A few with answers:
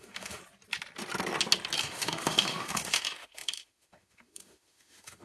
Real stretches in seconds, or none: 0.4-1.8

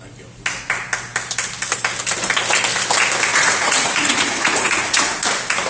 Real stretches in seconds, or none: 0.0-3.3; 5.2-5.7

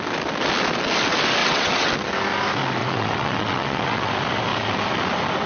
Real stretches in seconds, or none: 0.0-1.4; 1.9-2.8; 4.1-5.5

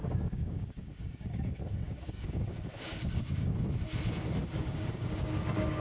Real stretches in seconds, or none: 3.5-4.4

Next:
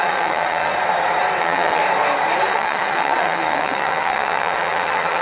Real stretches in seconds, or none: 0.7-1.4; 1.8-2.4

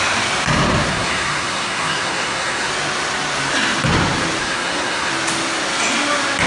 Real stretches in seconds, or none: 0.0-0.9; 2.7-4.4; 5.1-6.5

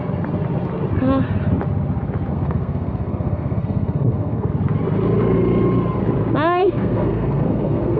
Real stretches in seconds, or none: 0.0-2.3; 4.5-6.6

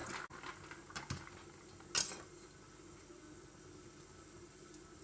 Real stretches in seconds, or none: 0.0-5.0